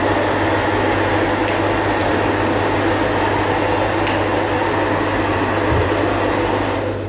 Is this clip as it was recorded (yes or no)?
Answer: yes